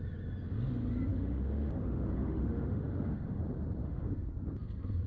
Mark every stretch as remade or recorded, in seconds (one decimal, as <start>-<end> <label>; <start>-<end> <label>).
0.0-1.1 recorded; 1.1-3.4 remade; 3.4-3.8 recorded; 3.8-4.3 remade; 4.3-5.1 recorded